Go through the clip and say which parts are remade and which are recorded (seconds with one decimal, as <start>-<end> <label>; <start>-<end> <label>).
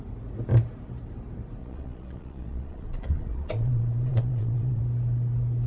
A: 0.0-1.6 recorded; 1.6-4.8 remade; 4.8-5.7 recorded